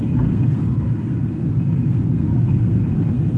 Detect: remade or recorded remade